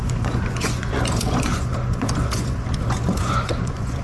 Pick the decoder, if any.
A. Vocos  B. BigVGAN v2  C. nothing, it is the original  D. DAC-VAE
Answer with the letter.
A